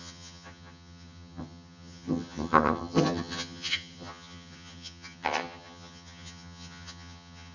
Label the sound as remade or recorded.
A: remade